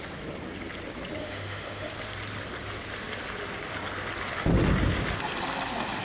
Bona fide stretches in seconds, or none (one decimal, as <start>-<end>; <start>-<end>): 0.0-1.2; 1.9-6.0